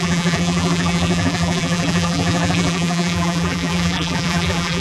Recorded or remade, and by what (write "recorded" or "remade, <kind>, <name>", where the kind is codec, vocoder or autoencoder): remade, vocoder, BigVGAN v2